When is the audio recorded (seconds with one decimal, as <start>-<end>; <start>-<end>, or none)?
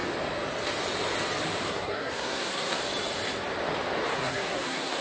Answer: 0.0-1.7; 2.8-4.1